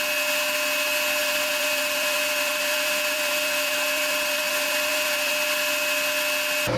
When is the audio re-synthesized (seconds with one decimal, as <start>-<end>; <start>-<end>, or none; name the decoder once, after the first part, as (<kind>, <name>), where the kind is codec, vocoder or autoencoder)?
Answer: 1.2-5.3 (vocoder, BigVGAN v2)